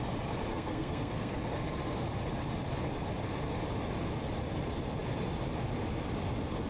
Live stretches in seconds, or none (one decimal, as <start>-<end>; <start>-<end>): 0.0-0.5; 1.4-6.7